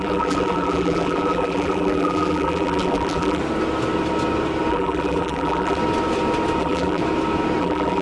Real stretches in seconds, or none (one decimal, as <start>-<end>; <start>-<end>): 3.4-4.7; 5.8-6.6; 7.0-7.6